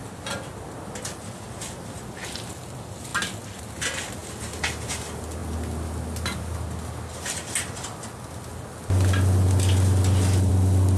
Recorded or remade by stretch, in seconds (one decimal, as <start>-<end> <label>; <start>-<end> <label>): 0.0-11.0 recorded